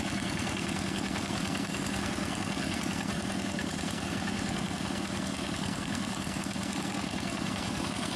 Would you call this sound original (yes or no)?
no